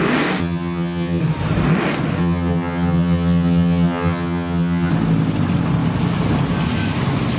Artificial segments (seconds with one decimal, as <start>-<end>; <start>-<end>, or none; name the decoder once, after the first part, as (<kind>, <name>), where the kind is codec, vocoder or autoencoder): 0.4-1.2 (vocoder, HiFi-GAN); 2.2-4.9